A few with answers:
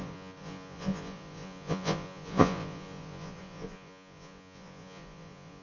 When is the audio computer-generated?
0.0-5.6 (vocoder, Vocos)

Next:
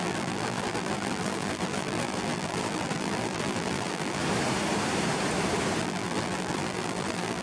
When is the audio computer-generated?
0.0-4.2 (vocoder, BigVGAN v2); 5.8-7.4

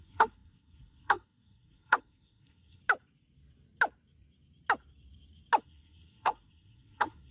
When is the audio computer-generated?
0.0-2.8 (codec, SNAC); 5.6-7.3

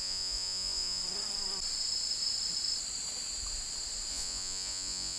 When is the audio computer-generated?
0.0-1.0 (vocoder, Vocos); 4.1-5.2

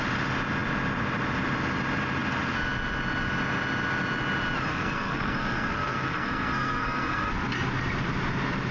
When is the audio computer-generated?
4.7-7.3 (codec, SNAC)

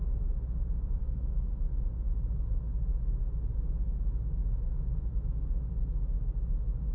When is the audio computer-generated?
1.0-1.5 (codec, SNAC)

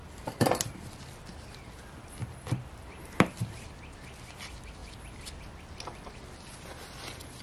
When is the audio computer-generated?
none